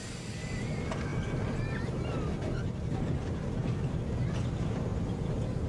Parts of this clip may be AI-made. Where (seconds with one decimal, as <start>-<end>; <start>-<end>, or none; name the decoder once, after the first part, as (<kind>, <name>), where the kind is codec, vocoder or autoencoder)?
none